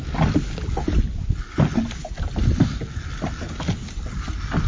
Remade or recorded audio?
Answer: recorded